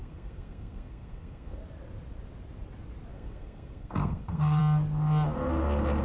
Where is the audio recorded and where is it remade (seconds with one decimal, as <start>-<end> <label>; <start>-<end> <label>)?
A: 0.0-1.6 remade; 1.6-3.1 recorded; 3.1-4.6 remade; 4.6-6.0 recorded